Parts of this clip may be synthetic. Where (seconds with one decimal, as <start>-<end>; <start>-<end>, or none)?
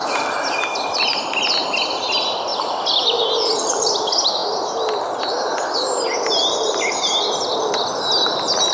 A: none